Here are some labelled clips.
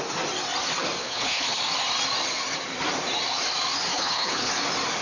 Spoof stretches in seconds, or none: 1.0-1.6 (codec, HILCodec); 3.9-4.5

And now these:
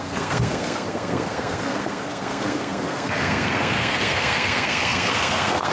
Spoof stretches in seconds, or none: 0.0-5.7 (codec, SNAC)

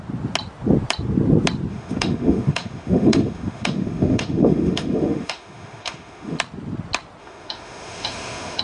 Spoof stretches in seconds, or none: 1.7-6.4 (autoencoder, DAC-VAE); 7.2-8.6

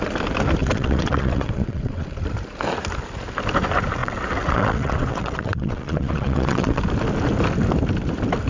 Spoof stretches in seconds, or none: 0.6-2.1 (vocoder, WaveNeXt); 4.0-6.8

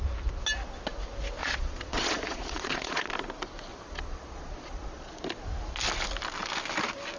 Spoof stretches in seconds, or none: 1.4-3.1 (vocoder, Vocos); 3.7-5.2

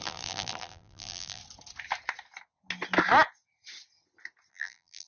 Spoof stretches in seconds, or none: 0.0-1.4 (vocoder, BigVGAN v2); 4.5-5.1

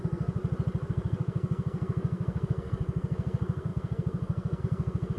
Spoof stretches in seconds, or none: 0.0-0.4 (codec, SNAC); 0.9-5.2

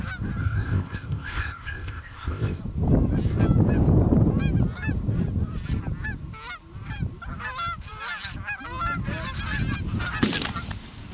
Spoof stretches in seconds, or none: 0.4-2.6 (codec, ZipCodec)